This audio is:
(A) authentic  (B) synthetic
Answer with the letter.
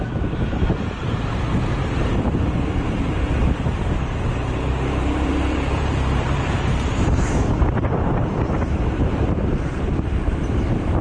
B